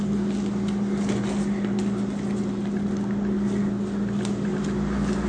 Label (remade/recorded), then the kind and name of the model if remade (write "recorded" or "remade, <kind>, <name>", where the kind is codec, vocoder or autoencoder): recorded